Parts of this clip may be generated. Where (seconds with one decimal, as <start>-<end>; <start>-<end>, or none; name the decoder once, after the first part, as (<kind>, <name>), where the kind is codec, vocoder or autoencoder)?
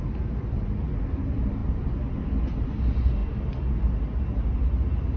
none